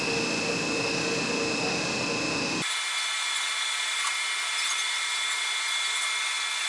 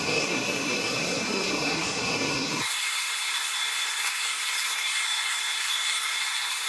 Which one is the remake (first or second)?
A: second